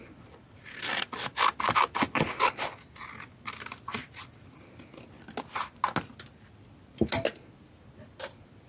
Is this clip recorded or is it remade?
recorded